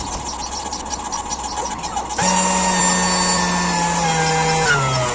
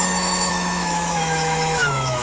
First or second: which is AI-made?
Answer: second